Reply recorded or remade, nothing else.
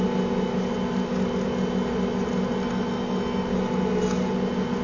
recorded